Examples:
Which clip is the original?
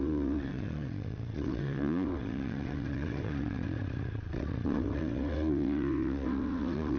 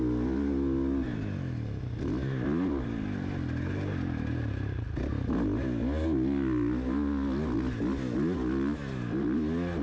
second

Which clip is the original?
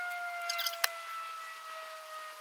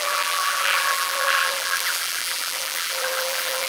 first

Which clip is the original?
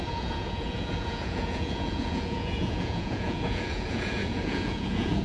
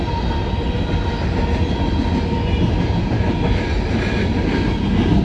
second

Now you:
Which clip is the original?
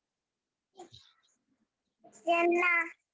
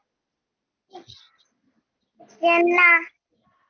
second